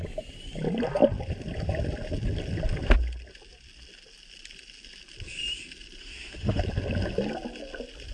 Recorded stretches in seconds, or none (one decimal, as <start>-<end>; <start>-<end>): 0.0-6.0; 6.6-8.1